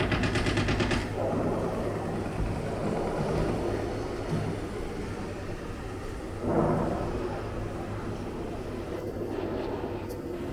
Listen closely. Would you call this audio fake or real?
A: real